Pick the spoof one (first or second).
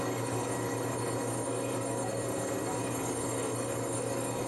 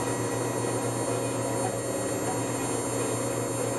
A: first